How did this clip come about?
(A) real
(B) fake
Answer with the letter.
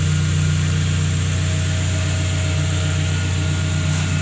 A